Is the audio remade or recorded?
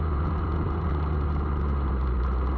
recorded